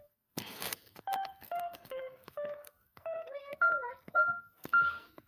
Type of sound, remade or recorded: remade